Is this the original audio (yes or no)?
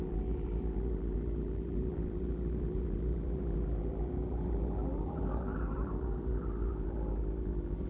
no